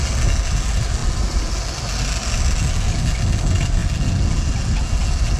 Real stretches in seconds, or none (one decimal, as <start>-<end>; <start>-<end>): 0.0-5.4